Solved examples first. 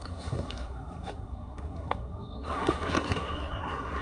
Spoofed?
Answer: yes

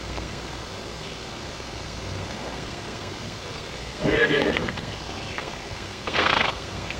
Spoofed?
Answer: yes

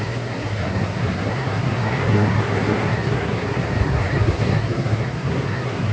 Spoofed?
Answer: yes